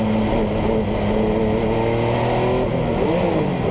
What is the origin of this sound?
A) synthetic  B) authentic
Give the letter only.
B